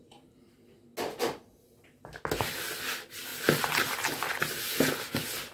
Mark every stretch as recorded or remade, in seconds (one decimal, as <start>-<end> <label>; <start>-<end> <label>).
0.0-3.3 recorded; 3.3-3.9 remade; 3.9-5.5 recorded